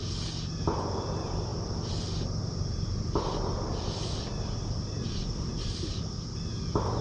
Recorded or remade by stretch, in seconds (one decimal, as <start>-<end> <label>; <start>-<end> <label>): 0.0-2.4 recorded; 2.4-5.1 remade; 5.1-7.0 recorded